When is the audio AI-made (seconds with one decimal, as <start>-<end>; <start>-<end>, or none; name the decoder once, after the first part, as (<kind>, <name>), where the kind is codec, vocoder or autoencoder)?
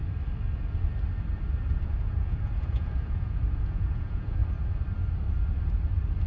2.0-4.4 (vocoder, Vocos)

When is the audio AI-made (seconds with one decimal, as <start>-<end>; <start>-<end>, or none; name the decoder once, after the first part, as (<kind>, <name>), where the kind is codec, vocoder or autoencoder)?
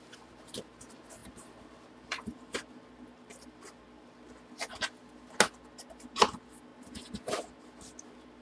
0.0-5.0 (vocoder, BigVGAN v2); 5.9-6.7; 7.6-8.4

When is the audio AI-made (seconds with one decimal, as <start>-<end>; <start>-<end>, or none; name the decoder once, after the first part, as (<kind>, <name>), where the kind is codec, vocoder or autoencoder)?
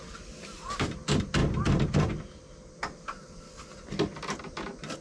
none